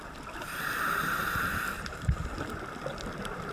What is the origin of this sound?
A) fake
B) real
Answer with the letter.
A